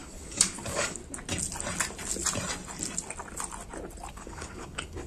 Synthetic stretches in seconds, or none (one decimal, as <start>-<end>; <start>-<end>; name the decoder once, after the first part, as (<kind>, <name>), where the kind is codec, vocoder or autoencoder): 0.0-1.0 (codec, DAC); 4.1-5.1